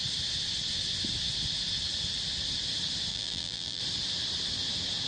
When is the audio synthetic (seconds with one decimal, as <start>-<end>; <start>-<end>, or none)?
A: 3.1-3.8